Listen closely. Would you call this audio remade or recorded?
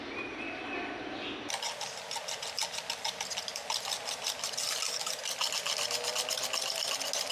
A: recorded